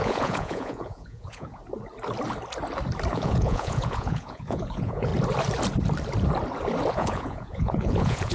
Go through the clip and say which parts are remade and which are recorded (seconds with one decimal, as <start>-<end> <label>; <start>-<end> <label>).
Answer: 0.0-1.6 remade; 1.6-3.1 recorded; 3.1-5.1 remade; 5.1-6.9 recorded; 6.9-8.3 remade